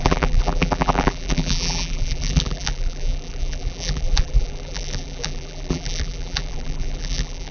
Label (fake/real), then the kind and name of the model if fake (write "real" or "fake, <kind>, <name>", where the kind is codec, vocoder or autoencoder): fake, vocoder, BigVGAN v2